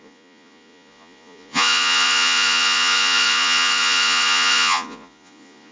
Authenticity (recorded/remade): remade